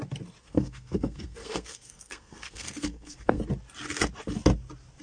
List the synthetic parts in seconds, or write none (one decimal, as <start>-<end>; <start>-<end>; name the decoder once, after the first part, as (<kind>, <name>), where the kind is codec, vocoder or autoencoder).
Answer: 0.4-3.4 (codec, SNAC)